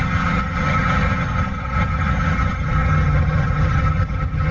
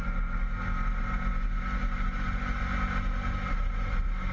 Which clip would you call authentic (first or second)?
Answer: second